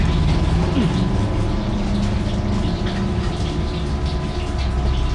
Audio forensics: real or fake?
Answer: real